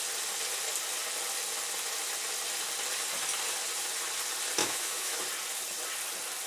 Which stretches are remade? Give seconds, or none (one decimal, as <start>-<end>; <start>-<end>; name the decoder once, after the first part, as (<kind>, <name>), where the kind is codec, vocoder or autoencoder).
4.6-5.2 (autoencoder, DAC-VAE)